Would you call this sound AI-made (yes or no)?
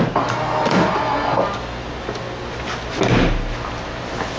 no